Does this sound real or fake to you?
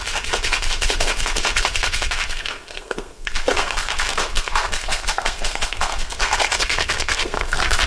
fake